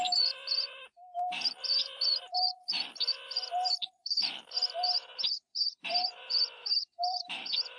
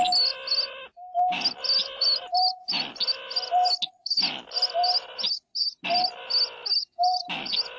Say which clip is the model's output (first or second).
first